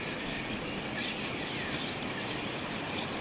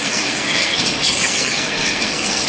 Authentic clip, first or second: first